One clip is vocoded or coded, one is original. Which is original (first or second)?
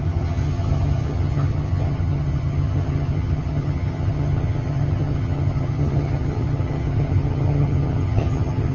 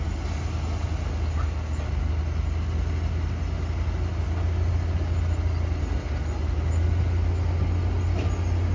second